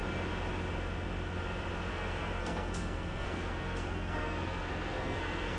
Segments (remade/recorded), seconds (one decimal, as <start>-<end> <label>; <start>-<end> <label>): 0.0-1.9 recorded; 1.9-5.6 remade